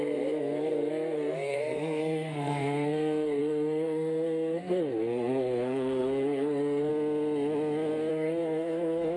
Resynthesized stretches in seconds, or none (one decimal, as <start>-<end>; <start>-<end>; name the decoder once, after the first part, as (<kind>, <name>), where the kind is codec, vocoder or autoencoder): 0.0-6.9 (codec, SNAC); 8.1-9.2